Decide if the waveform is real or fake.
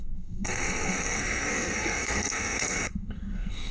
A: fake